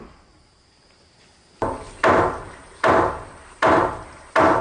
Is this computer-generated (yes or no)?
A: no